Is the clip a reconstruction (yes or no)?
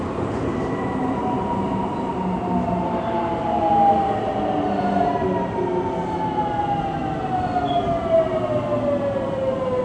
no